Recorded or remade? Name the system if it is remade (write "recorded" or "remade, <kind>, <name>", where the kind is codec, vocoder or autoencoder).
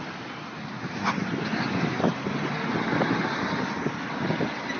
recorded